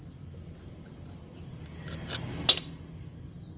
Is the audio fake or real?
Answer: real